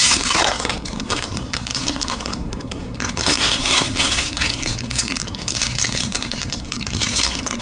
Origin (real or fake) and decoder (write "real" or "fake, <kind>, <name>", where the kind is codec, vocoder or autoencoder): fake, codec, SNAC